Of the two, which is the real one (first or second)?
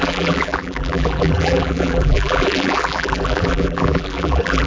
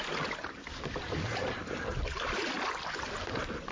second